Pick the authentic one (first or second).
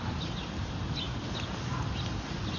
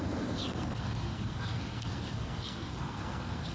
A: first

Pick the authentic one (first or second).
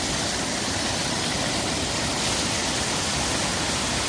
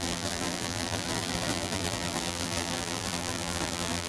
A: first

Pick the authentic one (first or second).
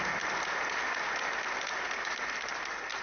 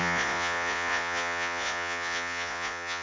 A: first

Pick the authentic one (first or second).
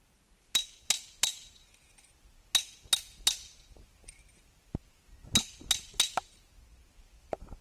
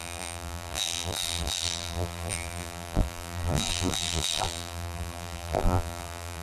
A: first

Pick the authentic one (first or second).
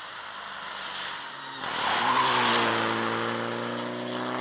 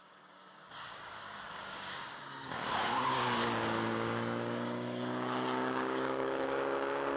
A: first